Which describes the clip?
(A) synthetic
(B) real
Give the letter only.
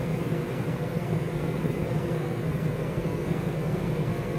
A